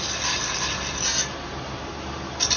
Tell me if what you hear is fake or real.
real